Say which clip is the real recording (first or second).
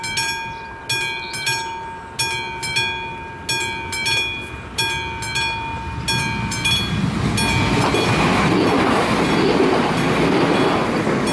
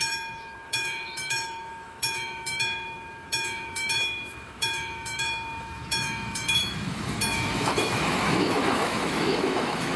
first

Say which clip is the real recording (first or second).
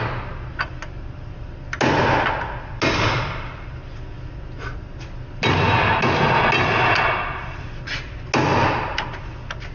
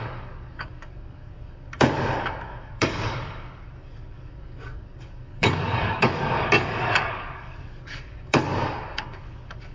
first